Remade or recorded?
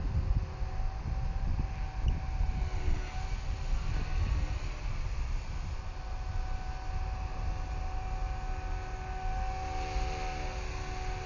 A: recorded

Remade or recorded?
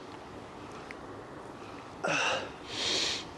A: recorded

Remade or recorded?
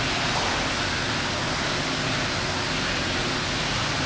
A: recorded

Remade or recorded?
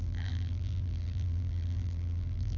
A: remade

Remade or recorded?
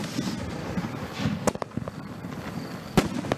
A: recorded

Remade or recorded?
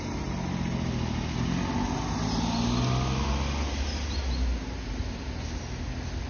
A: recorded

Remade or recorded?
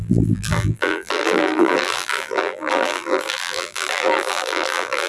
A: remade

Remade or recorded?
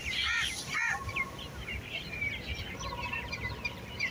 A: remade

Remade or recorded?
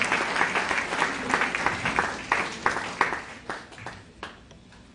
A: recorded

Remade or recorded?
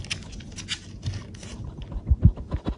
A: recorded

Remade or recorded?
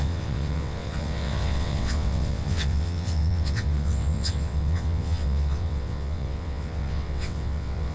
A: remade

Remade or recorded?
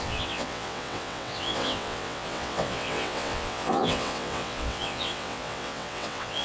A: remade